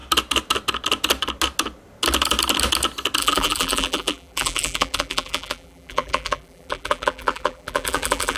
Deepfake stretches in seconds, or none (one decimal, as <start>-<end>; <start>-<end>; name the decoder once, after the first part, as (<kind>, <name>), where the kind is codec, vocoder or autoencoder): 3.2-8.4 (vocoder, BigVGAN v2)